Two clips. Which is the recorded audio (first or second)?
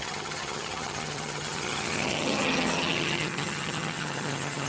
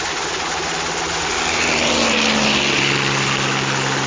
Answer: second